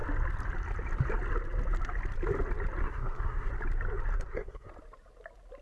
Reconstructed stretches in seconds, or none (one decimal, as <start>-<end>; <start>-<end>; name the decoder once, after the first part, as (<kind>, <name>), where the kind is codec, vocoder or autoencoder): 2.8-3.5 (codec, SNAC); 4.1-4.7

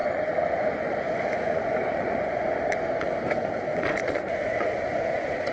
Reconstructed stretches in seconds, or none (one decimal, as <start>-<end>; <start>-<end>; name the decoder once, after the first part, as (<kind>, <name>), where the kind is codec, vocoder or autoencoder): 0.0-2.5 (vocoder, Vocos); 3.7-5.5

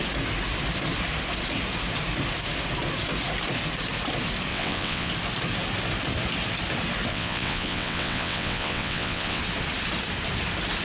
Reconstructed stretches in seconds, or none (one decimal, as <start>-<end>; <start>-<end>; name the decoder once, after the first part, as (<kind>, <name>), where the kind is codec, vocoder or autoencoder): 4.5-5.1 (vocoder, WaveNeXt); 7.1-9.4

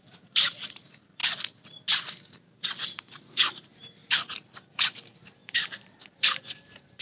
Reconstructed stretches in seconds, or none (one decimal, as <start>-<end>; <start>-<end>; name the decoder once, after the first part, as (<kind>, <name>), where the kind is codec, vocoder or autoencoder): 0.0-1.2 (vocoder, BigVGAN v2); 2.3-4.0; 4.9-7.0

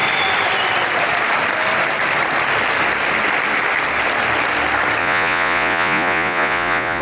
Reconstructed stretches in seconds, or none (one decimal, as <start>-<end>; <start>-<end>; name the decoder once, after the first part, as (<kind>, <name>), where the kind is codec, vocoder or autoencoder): 5.0-7.0 (vocoder, Vocos)